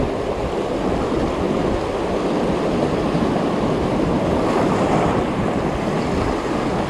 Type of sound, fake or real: real